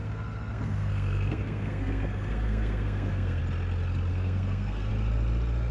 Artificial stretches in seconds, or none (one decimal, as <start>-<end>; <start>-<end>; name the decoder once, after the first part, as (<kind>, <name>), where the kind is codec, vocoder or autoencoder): 0.0-3.4 (codec, SNAC); 4.1-4.9